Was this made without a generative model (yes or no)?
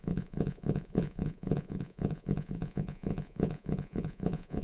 no